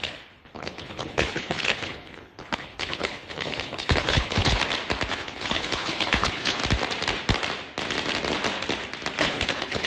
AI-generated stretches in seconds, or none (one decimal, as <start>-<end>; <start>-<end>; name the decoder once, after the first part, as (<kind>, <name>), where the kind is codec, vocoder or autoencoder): 0.0-4.6 (codec, HILCodec); 5.1-6.6; 9.2-9.9